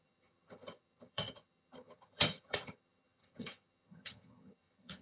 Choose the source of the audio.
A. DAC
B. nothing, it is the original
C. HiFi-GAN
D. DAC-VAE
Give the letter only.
C